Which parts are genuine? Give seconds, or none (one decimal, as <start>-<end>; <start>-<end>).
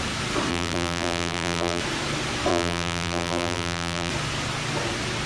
0.0-0.5; 1.8-2.5; 4.1-5.3